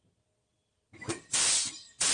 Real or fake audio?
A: real